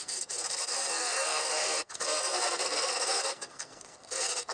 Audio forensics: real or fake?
fake